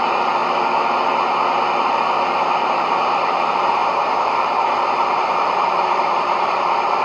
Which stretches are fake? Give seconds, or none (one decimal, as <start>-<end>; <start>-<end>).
0.0-0.4; 1.7-7.0